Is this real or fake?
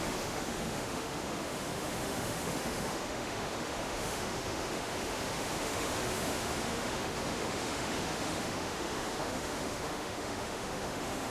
fake